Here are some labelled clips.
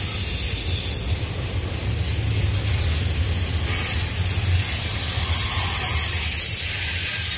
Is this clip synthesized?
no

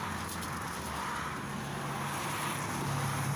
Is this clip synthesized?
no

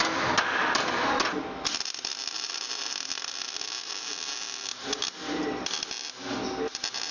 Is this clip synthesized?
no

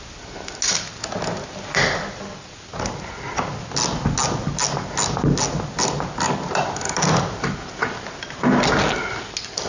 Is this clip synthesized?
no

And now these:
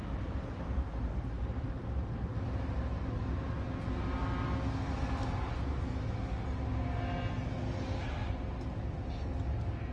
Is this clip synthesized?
no